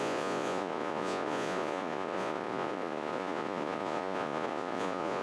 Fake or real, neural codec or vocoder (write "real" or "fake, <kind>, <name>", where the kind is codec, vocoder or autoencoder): fake, vocoder, Vocos